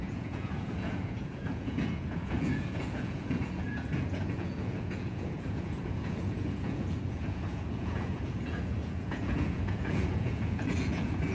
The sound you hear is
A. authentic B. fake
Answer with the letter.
B